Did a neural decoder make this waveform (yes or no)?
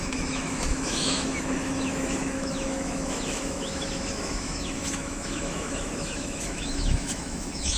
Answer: yes